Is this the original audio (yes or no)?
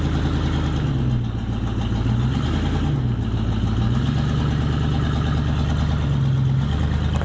yes